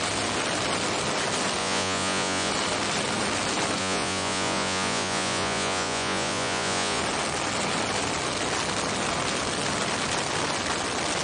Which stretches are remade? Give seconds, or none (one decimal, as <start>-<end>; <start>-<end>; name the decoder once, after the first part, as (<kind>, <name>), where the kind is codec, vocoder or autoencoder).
1.6-2.5 (vocoder, Vocos); 3.8-7.0